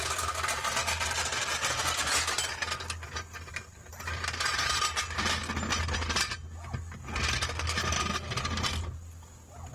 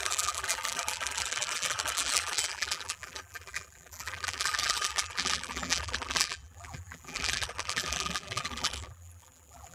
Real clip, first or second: first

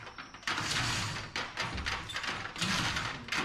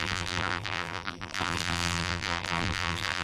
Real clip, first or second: first